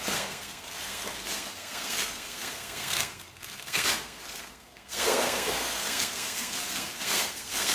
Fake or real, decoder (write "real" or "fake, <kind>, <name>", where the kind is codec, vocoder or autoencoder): fake, codec, SNAC